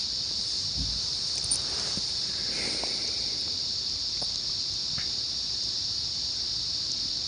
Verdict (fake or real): fake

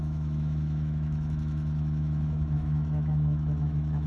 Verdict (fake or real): fake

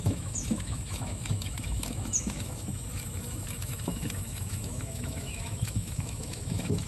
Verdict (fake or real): fake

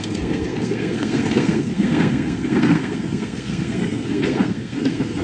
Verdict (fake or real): fake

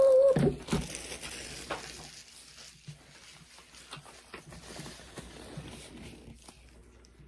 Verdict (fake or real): real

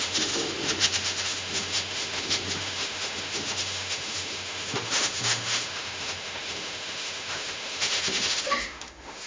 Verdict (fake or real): fake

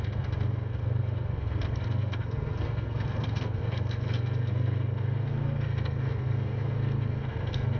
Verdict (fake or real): fake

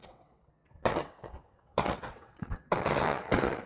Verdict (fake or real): fake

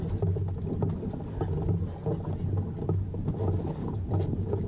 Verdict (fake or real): real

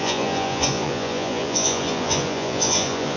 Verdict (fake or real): fake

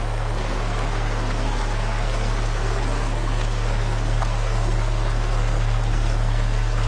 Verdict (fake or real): fake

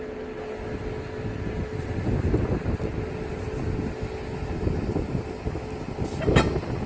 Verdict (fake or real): real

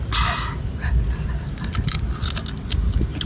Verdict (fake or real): real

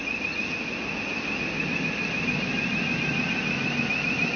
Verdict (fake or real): real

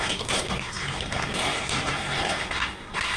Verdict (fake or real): fake